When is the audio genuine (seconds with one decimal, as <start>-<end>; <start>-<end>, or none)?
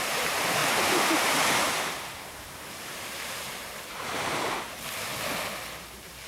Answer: 0.6-2.7; 5.1-5.8